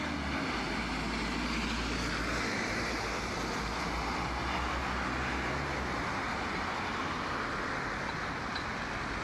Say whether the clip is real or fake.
real